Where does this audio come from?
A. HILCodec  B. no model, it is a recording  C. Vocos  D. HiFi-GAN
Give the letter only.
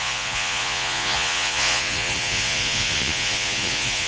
C